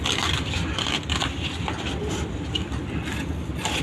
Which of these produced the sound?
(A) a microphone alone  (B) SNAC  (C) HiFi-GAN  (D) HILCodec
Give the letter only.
A